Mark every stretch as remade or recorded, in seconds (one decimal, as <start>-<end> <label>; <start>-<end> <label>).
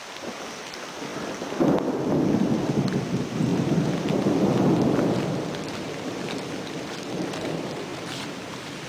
0.0-1.1 remade; 1.1-2.0 recorded; 2.0-7.9 remade; 7.9-8.5 recorded; 8.5-8.9 remade